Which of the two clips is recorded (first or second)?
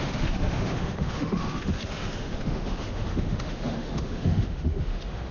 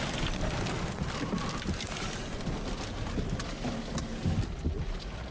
second